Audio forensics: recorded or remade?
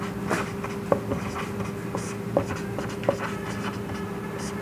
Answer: recorded